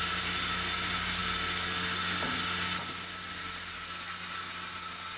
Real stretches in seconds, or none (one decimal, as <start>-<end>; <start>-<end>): 0.0-5.2